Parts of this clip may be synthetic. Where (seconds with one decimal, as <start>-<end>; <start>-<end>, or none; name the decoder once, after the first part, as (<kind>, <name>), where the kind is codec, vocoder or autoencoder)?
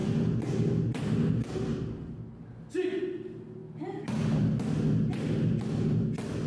none